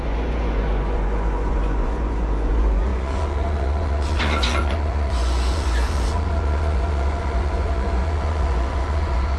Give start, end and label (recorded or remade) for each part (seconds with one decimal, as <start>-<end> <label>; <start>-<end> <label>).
0.0-9.4 remade